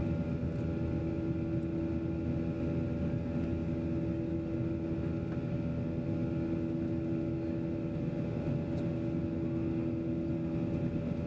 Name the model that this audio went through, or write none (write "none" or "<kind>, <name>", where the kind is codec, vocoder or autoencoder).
none